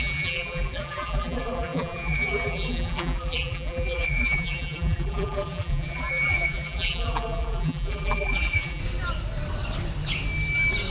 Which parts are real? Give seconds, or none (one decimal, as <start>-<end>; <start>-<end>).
8.8-10.9